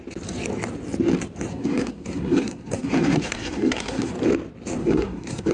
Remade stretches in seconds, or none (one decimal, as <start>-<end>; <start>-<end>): 1.5-4.1; 4.8-5.5